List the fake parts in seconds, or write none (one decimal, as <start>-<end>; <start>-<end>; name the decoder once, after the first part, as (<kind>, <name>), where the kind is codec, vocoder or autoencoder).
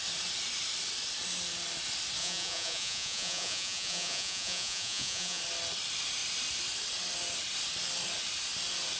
2.2-5.4 (vocoder, Vocos)